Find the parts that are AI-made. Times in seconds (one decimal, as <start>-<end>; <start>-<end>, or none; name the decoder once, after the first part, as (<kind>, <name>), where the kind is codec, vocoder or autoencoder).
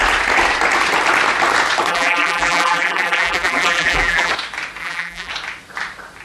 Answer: 1.9-4.3 (vocoder, BigVGAN v2); 4.8-5.3